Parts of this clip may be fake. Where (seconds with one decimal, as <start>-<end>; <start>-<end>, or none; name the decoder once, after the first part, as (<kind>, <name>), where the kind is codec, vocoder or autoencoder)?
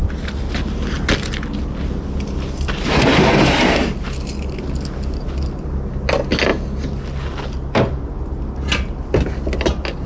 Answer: none